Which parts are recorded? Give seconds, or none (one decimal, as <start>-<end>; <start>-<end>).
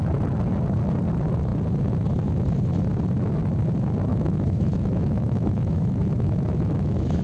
0.0-4.1